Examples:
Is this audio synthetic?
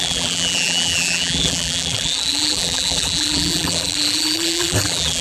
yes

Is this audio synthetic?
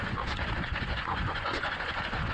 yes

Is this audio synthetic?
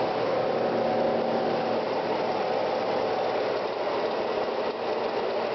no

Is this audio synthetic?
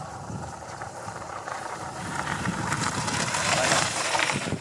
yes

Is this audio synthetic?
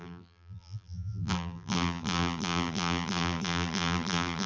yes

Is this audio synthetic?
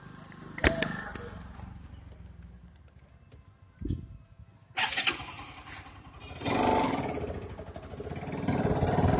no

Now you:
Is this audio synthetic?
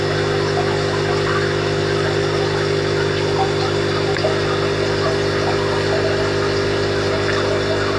no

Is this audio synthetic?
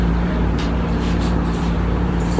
yes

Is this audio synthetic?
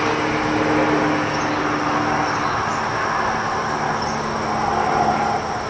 no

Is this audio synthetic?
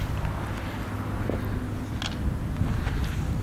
no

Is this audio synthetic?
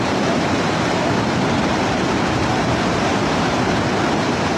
yes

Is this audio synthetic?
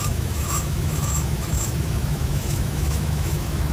yes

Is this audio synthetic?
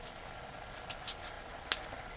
no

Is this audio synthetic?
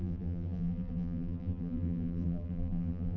yes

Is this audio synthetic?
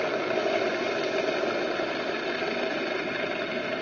no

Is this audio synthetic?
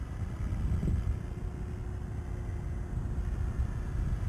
no